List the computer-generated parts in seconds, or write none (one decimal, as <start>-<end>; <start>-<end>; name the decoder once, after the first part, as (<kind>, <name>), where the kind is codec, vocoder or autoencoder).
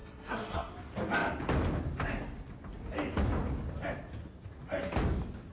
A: 0.0-0.7 (codec, SNAC)